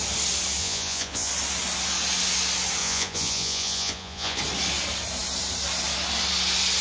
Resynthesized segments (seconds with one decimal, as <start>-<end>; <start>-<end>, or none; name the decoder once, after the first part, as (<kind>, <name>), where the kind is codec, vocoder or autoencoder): 0.6-1.3 (vocoder, Vocos); 2.8-4.4